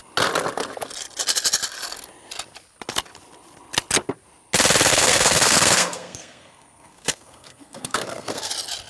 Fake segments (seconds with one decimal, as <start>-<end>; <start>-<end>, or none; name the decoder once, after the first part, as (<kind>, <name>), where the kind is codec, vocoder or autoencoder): 4.9-8.5 (codec, SNAC)